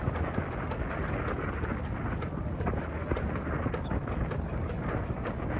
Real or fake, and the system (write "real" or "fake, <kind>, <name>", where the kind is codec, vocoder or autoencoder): real